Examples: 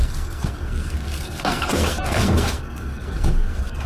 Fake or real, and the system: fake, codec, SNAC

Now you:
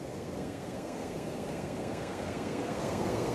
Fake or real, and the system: fake, codec, SNAC